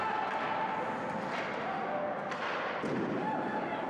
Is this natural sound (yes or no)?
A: yes